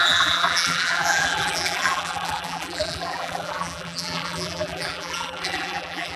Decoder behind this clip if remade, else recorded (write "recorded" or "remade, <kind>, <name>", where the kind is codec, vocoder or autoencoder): remade, vocoder, BigVGAN v2